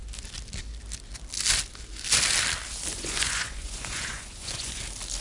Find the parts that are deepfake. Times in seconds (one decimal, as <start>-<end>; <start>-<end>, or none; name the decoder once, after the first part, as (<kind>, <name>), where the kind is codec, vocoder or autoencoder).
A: 2.9-4.8 (vocoder, Vocos)

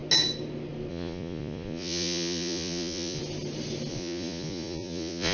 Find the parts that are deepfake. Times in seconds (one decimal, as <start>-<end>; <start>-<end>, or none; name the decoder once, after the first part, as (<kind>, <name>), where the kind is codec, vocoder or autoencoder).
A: 0.9-3.2 (vocoder, Vocos); 3.9-5.3